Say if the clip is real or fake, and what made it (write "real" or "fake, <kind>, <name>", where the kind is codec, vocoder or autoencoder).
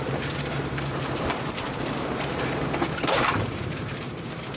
fake, vocoder, BigVGAN v2